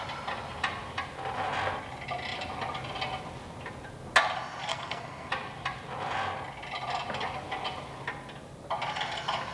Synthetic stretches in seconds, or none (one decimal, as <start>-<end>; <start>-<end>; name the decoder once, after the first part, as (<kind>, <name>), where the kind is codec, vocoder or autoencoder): 4.7-5.3 (codec, SNAC)